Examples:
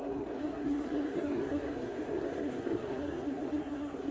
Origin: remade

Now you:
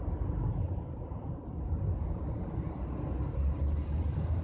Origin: recorded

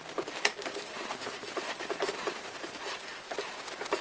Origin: recorded